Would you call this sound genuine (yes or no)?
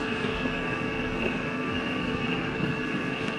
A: no